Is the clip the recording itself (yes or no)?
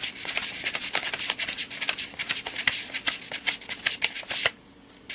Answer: yes